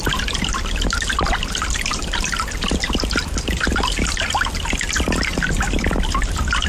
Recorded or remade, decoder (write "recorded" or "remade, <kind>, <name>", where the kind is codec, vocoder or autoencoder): recorded